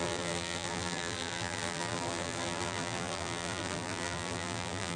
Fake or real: fake